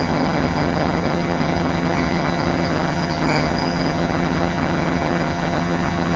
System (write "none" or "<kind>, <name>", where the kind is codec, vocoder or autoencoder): vocoder, HiFi-GAN